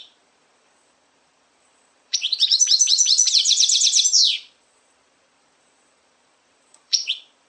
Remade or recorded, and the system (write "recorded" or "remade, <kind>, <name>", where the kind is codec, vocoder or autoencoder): remade, vocoder, Vocos